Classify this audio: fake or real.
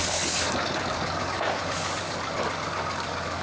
fake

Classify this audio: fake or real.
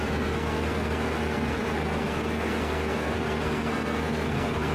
fake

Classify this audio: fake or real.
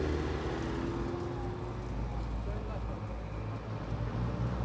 real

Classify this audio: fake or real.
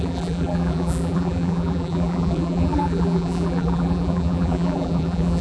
fake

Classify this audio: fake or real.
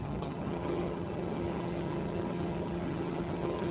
fake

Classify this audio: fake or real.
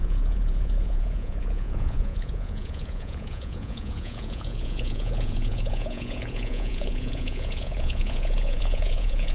fake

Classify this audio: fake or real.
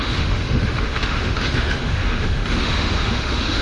fake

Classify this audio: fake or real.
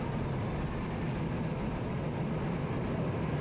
real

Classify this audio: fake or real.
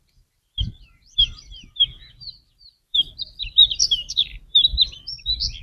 fake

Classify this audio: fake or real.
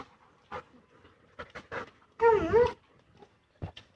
real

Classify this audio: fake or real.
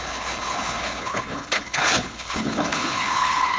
fake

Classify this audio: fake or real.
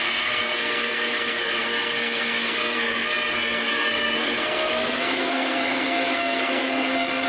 fake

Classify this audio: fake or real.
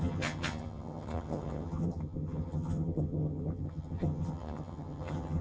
fake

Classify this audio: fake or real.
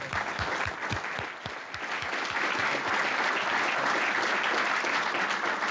real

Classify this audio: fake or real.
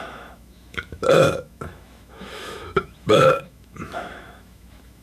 fake